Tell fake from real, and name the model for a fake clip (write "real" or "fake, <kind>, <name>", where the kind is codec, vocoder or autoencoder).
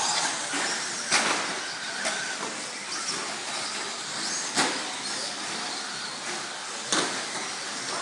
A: real